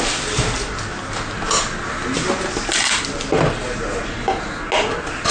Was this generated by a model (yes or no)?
no